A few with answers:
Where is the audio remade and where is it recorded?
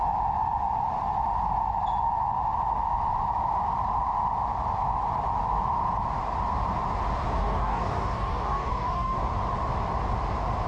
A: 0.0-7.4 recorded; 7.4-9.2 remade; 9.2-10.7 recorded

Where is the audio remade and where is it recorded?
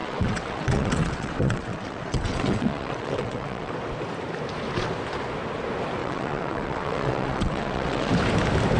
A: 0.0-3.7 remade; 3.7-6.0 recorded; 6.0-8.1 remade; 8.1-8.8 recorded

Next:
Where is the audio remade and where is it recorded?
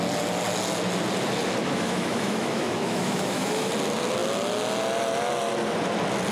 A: 0.0-1.6 recorded; 1.6-3.7 remade; 3.7-6.3 recorded